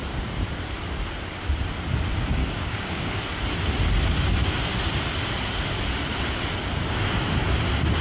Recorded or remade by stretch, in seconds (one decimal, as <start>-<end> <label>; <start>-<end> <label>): 0.0-2.4 recorded; 2.4-3.2 remade; 3.2-8.0 recorded